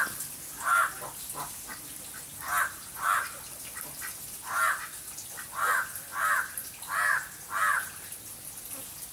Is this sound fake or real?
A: real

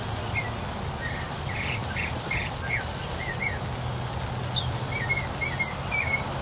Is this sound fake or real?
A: real